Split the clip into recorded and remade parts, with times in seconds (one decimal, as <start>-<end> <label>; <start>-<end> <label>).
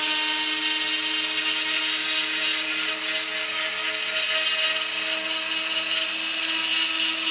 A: 0.0-7.3 recorded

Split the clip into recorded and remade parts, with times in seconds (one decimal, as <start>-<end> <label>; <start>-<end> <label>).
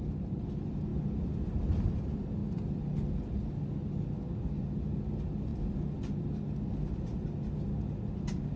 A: 0.0-8.6 recorded